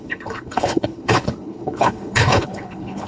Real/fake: fake